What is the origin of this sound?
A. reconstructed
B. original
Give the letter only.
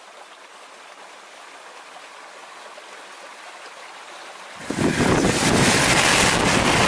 B